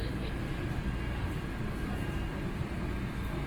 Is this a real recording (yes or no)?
yes